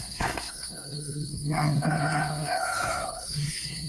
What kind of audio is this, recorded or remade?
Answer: remade